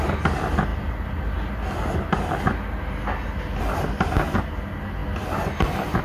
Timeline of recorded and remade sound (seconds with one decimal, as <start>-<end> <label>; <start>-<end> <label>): 0.0-6.0 recorded